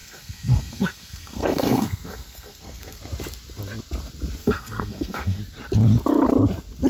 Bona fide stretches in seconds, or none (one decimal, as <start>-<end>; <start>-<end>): 3.0-4.4; 5.4-6.9